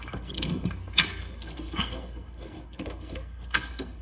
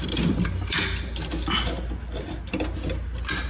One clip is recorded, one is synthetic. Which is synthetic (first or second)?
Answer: first